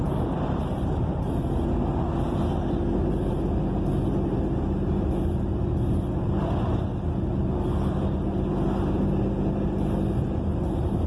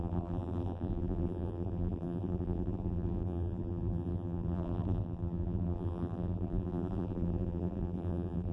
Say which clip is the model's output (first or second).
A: second